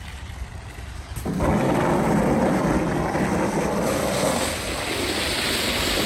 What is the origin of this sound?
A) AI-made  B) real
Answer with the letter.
B